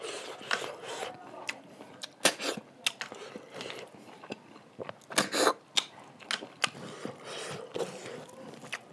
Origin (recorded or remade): recorded